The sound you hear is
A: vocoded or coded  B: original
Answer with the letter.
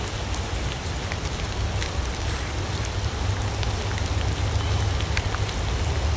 B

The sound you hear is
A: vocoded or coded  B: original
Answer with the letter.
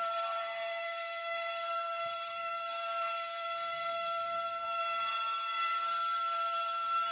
A